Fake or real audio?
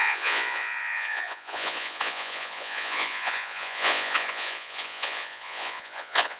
fake